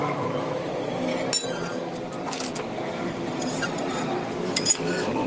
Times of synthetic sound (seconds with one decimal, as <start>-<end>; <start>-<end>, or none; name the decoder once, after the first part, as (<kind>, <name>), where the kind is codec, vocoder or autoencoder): 0.0-1.1 (autoencoder, DAC-VAE); 4.3-5.3